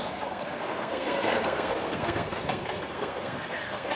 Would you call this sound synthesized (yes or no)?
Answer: yes